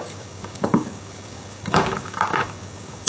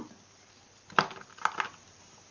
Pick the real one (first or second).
second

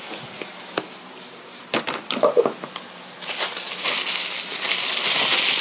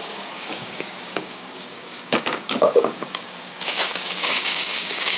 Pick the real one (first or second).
first